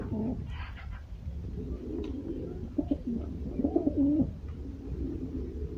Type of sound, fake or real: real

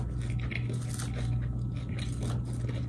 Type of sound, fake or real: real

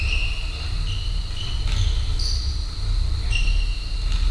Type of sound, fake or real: real